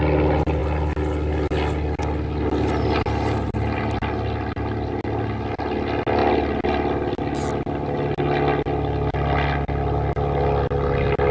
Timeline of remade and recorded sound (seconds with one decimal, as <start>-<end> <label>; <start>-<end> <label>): 0.0-11.3 recorded